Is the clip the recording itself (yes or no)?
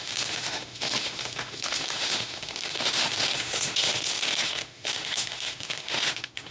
no